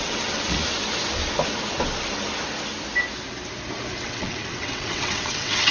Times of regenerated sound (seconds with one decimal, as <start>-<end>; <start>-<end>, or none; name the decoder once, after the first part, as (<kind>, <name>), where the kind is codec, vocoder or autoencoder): 0.0-0.6 (vocoder, WaveNeXt); 4.0-5.7